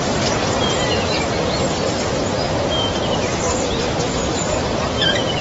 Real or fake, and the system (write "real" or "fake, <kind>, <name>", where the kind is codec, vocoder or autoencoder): fake, vocoder, BigVGAN v2